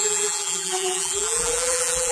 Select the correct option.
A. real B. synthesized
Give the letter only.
B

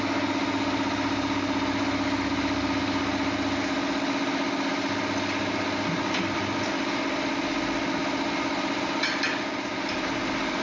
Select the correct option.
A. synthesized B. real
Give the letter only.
B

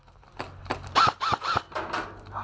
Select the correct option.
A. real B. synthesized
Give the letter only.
A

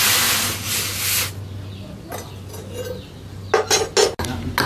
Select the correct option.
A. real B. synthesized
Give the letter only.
A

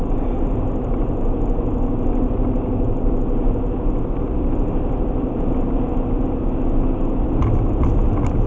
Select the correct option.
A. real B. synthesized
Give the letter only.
A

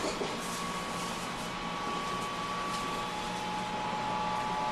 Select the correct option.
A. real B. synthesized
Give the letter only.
A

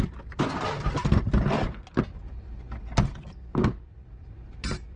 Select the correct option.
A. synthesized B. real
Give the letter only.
B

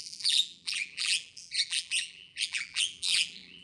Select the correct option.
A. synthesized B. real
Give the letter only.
A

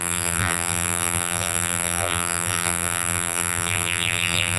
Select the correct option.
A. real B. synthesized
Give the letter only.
B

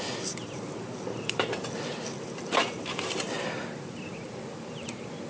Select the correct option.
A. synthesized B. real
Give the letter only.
A